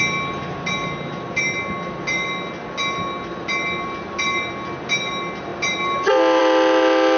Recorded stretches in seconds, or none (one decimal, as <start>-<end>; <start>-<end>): 0.0-7.2